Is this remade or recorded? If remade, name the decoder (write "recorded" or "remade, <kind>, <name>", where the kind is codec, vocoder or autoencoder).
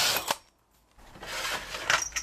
recorded